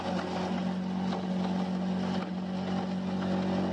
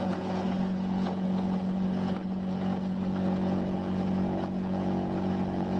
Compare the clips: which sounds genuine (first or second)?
first